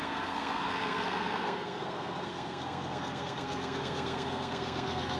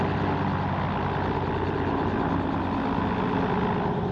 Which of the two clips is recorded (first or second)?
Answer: second